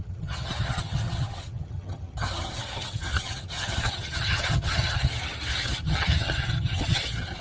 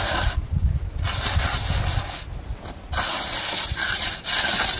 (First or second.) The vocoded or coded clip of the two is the first